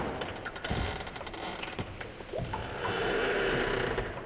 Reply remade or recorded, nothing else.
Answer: recorded